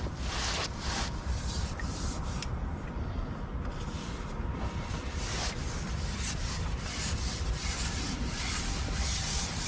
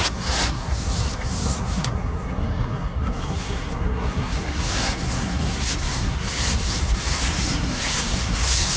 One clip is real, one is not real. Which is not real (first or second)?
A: second